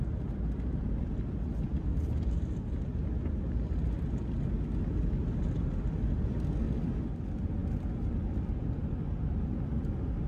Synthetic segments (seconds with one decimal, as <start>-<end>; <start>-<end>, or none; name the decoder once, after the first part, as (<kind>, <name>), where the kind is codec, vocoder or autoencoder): none